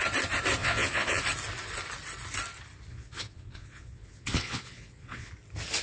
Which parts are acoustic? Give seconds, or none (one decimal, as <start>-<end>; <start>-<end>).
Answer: 0.0-0.6; 1.2-2.9; 5.3-5.8